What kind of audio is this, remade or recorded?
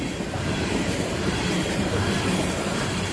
remade